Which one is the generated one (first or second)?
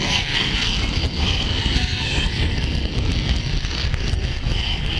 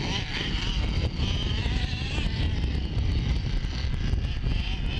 first